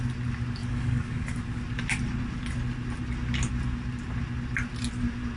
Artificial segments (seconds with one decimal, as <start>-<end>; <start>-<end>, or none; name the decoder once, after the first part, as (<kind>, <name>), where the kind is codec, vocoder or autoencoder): 0.6-1.4 (codec, DAC)